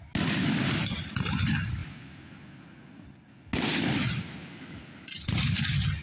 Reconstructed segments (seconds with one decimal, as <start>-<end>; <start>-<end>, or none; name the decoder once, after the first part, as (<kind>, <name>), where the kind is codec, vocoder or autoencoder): none